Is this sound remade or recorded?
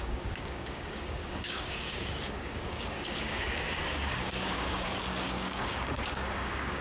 remade